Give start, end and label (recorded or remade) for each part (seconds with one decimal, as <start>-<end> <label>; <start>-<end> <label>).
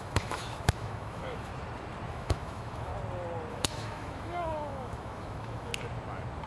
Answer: 0.0-1.5 remade; 1.5-2.1 recorded; 2.1-2.9 remade; 2.9-3.5 recorded; 3.5-5.7 remade; 5.7-6.5 recorded